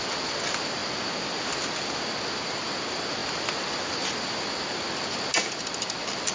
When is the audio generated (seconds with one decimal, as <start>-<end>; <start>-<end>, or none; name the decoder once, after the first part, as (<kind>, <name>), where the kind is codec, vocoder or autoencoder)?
none